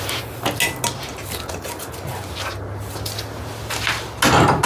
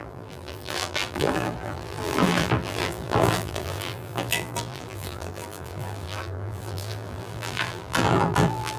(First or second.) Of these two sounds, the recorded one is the first